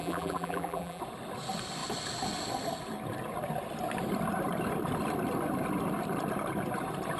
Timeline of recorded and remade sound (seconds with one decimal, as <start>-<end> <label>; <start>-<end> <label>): 0.0-1.0 remade; 1.0-7.2 recorded